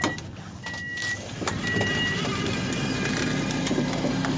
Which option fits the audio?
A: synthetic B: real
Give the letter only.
B